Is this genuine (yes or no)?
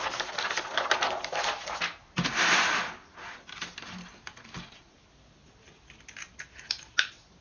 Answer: yes